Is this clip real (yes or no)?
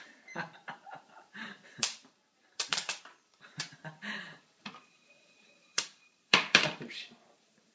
no